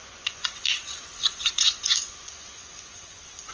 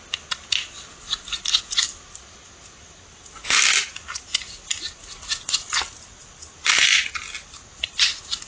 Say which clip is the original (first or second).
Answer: second